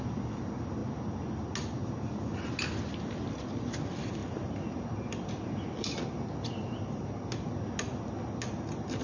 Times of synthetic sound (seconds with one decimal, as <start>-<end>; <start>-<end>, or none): none